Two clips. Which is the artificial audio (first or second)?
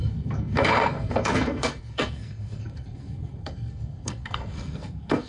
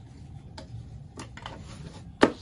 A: first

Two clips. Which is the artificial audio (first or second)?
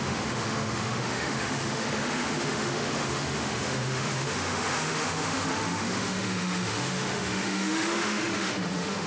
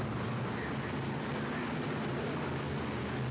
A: first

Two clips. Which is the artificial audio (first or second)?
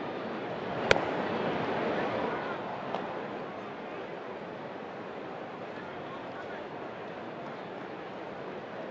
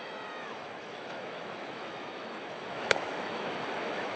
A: second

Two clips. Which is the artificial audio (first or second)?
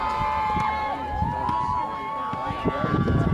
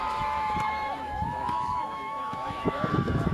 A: second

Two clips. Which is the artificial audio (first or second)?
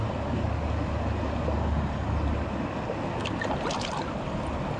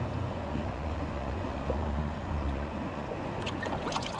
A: second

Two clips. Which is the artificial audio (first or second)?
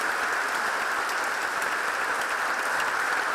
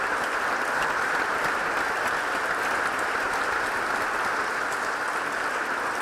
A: first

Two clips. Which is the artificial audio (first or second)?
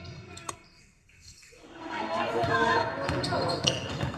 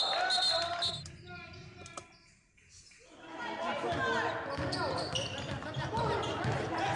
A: first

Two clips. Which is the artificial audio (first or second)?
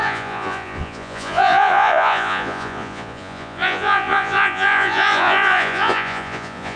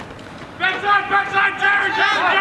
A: first